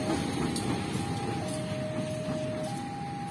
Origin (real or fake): real